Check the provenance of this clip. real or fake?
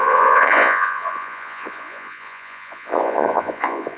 fake